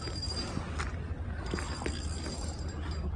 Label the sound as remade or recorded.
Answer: recorded